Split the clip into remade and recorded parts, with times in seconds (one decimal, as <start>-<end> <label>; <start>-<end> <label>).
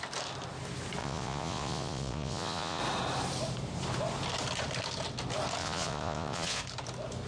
0.0-1.0 recorded; 1.0-2.8 remade; 2.8-5.6 recorded; 5.6-6.6 remade; 6.6-7.3 recorded